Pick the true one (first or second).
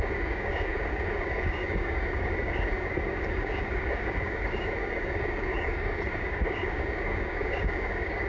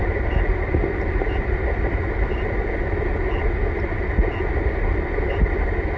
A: second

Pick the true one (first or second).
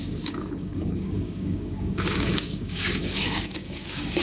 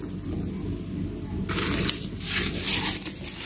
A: second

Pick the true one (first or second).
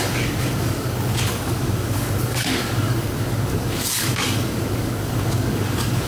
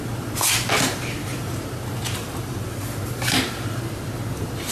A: second